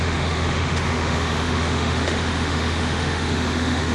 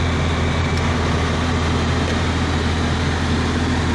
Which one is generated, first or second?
first